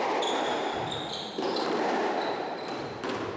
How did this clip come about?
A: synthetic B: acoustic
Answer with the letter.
B